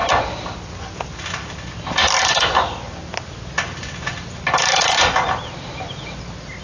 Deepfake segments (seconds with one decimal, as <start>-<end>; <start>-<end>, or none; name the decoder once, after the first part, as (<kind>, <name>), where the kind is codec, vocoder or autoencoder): none